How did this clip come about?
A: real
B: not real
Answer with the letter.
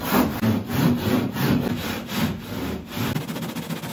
A